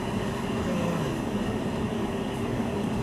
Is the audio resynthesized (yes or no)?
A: yes